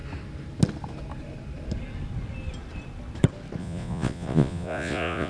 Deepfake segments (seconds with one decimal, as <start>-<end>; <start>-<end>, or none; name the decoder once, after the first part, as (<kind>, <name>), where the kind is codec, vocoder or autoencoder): 3.6-5.3 (vocoder, Vocos)